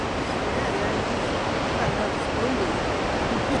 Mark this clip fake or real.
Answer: real